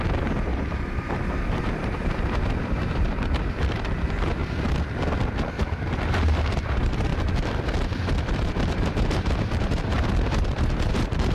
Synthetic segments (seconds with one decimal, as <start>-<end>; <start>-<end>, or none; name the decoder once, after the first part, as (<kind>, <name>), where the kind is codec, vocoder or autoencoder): 0.0-4.4 (vocoder, BigVGAN v2); 5.5-7.1; 8.4-11.3